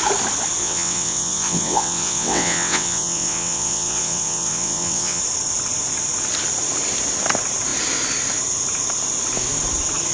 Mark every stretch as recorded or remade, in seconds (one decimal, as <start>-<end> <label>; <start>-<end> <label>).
0.0-0.6 recorded; 0.6-5.2 remade; 5.2-10.1 recorded